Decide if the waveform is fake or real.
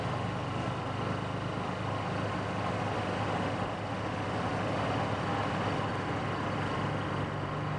real